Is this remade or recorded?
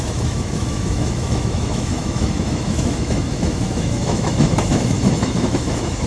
remade